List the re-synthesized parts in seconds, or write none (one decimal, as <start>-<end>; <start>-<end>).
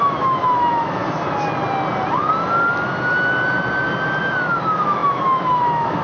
0.0-1.0; 4.2-6.0